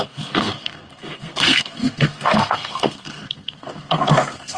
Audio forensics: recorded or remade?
remade